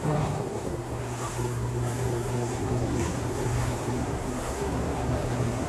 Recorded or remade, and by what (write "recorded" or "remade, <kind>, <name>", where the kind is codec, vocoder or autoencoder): remade, codec, SNAC